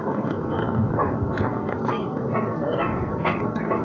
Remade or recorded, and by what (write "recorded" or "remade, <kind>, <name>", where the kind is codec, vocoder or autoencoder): remade, codec, SNAC